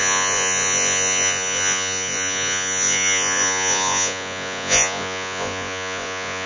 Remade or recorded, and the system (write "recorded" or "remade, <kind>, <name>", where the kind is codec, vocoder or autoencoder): remade, vocoder, Vocos